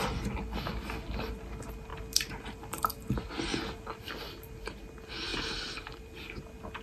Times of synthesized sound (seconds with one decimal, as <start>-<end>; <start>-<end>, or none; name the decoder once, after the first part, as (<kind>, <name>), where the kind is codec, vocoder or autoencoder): 1.9-4.1 (vocoder, BigVGAN v2); 5.3-6.3